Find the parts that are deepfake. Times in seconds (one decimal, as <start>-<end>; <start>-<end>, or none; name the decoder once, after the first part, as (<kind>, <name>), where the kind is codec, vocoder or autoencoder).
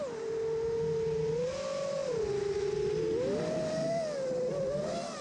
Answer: none